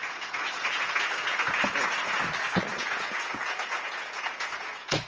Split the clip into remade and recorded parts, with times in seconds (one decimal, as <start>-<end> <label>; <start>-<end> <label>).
0.0-2.2 remade; 2.2-2.7 recorded; 2.7-5.1 remade